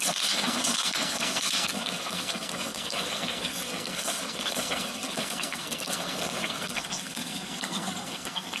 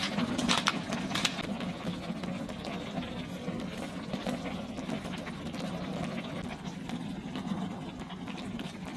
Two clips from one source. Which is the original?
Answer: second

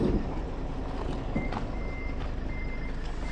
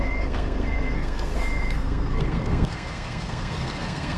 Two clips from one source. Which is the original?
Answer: first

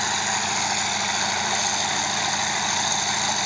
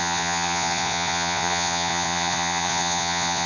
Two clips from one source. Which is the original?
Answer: first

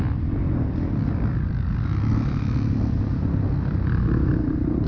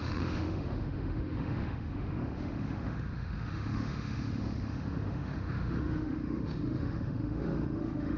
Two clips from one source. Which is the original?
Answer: first